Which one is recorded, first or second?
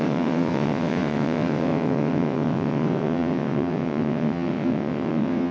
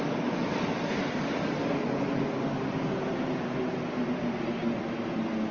second